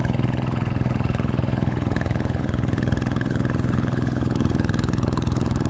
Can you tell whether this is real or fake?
fake